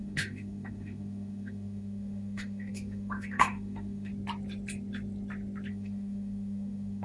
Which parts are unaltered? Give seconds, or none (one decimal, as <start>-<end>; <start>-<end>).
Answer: 4.1-5.7